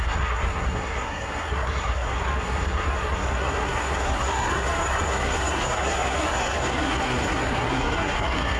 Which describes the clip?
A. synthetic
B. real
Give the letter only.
A